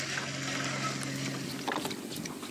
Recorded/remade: recorded